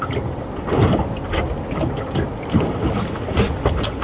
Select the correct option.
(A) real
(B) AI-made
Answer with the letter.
A